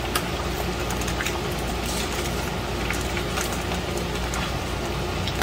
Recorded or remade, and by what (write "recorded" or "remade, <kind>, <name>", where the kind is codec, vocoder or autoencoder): recorded